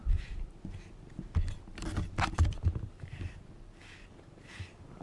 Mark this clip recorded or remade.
recorded